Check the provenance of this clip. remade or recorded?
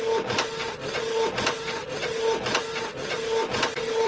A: recorded